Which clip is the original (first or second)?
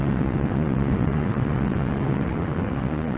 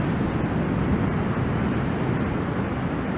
second